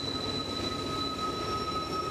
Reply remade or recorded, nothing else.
recorded